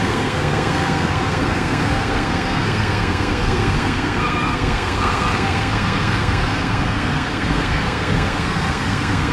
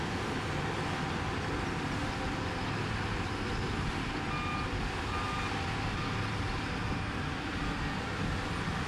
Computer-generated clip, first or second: first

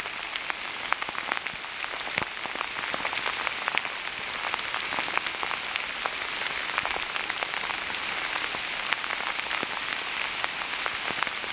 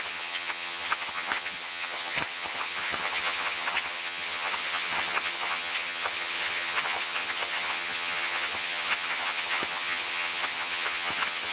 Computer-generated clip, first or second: second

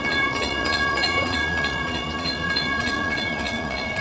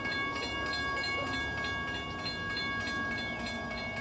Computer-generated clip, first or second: first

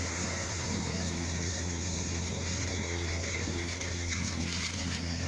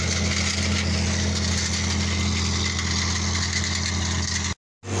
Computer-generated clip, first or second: first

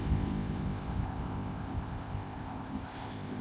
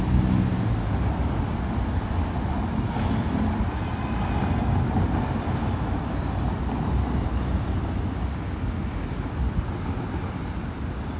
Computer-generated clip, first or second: first